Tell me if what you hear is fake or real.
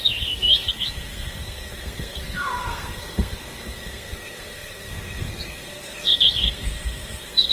fake